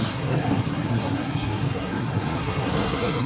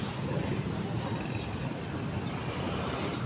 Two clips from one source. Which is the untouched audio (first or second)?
second